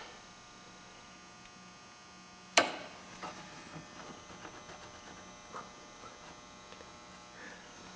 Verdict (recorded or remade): recorded